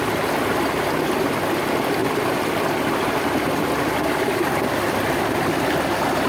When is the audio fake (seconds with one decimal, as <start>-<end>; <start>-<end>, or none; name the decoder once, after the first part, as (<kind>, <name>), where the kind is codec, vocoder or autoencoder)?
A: none